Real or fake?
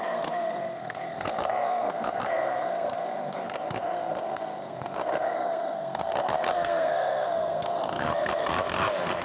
fake